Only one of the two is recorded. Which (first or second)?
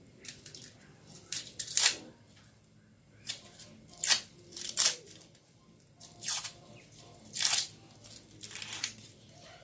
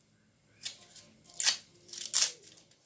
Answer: second